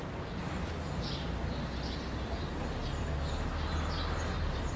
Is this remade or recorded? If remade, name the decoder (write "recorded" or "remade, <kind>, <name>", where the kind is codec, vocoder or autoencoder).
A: recorded